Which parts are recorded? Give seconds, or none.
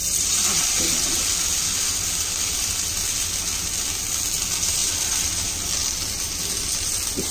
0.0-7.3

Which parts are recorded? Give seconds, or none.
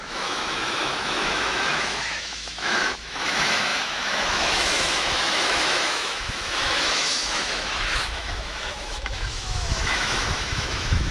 none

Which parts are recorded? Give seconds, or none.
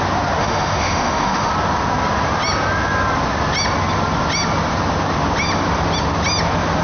0.0-0.4; 1.5-6.8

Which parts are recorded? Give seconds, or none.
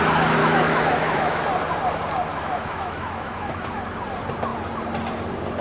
0.0-0.4; 1.4-2.3; 3.8-5.6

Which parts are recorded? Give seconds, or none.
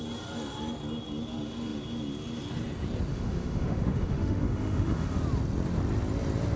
0.0-3.1; 5.2-6.6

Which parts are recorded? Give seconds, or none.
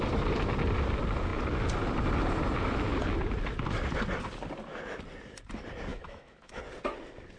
0.0-5.9; 6.6-7.4